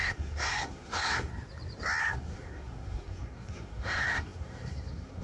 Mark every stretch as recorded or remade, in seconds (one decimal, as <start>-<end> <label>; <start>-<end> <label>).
0.0-1.3 remade; 1.3-2.0 recorded; 2.0-5.2 remade